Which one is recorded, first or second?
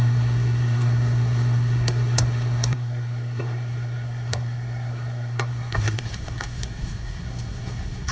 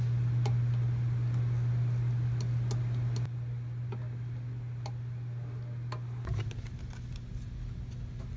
second